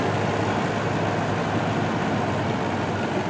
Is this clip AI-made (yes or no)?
no